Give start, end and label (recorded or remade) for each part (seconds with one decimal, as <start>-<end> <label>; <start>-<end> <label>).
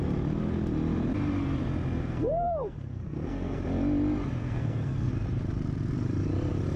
0.0-2.0 recorded; 2.0-3.6 remade; 3.6-4.4 recorded; 4.4-5.1 remade; 5.1-6.8 recorded